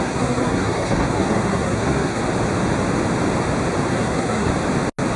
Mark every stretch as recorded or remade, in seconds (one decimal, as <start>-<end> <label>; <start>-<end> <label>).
0.0-2.2 remade; 2.2-3.9 recorded; 3.9-4.5 remade; 4.5-5.2 recorded